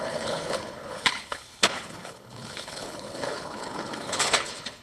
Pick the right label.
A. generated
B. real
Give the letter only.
A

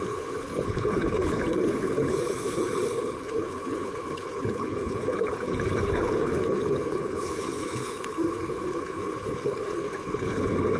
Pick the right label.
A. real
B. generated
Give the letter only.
B